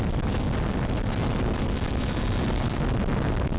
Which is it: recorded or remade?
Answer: recorded